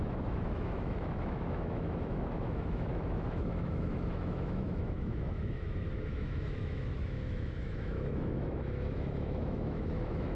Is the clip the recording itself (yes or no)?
no